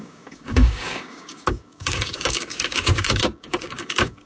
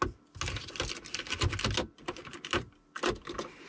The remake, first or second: first